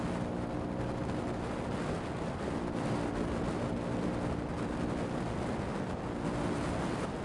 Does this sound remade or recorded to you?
recorded